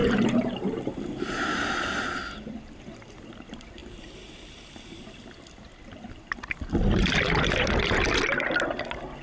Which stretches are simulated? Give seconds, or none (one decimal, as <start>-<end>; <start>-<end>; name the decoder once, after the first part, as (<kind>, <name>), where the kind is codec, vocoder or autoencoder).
0.0-0.9 (vocoder, BigVGAN v2)